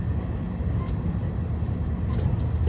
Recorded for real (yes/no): yes